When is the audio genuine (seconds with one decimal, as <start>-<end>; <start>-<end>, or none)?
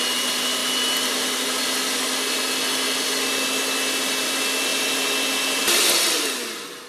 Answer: 0.0-6.9